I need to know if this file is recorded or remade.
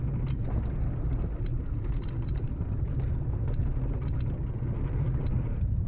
recorded